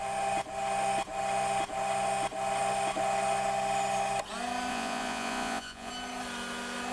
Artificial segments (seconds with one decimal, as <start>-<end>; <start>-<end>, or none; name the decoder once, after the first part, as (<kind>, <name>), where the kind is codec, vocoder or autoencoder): 4.7-5.9 (vocoder, Vocos)